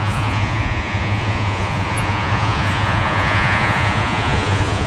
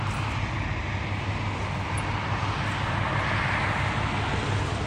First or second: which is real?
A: second